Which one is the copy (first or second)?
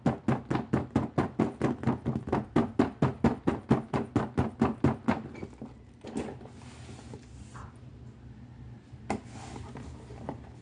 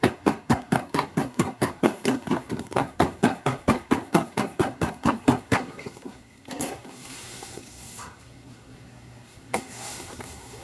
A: second